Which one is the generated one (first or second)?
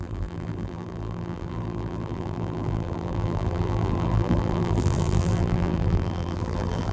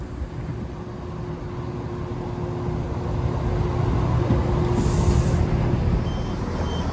first